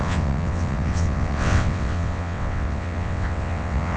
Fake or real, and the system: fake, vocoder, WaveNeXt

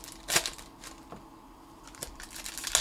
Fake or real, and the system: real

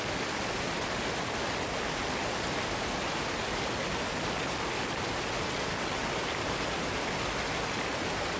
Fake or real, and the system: real